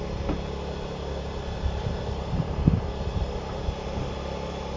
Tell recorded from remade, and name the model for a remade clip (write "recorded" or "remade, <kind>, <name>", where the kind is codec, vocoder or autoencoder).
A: recorded